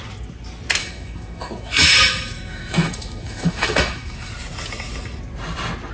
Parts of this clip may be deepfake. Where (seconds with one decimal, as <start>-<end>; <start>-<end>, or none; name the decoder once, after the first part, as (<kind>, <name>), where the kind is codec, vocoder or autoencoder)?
0.8-4.3 (autoencoder, DAC-VAE)